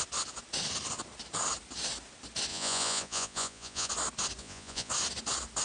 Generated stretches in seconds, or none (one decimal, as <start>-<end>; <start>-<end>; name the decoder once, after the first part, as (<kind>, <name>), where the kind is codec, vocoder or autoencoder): 2.5-3.9 (vocoder, Vocos); 4.4-4.9